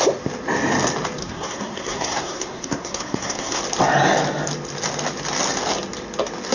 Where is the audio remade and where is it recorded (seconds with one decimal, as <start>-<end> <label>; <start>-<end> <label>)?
0.0-1.2 recorded; 1.2-3.6 remade; 3.6-6.5 recorded